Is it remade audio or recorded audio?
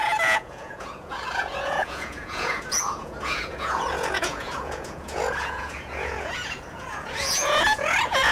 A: remade